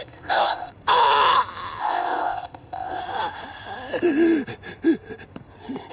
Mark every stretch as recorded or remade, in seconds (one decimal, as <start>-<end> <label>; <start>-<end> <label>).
0.0-0.7 remade; 0.7-1.8 recorded; 1.8-3.0 remade; 3.0-5.9 recorded